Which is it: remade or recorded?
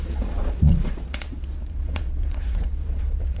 remade